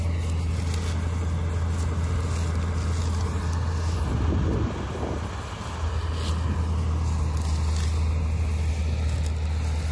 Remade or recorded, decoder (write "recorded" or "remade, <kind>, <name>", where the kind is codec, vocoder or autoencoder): recorded